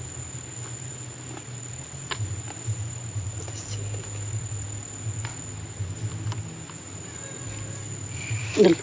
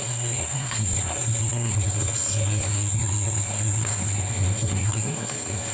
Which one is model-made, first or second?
second